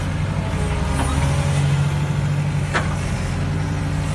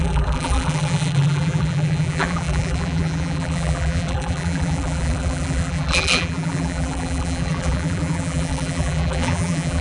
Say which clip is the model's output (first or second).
second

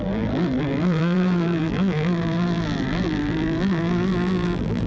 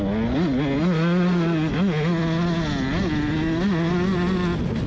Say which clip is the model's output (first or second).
first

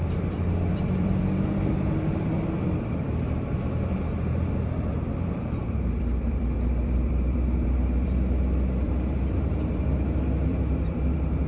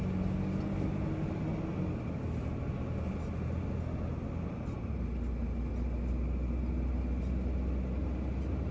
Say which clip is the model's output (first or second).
first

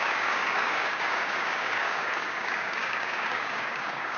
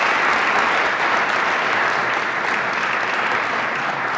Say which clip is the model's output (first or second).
first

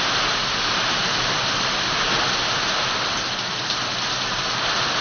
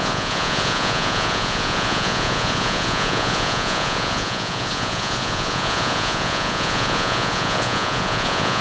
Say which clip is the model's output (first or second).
second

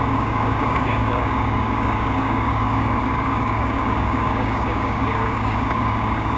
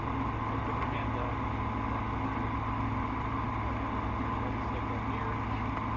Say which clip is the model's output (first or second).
first